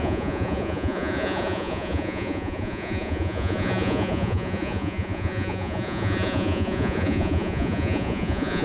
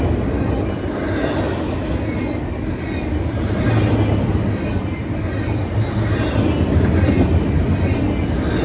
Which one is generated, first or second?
first